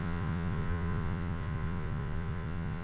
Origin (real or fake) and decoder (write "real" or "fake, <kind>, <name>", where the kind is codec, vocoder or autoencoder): fake, vocoder, Vocos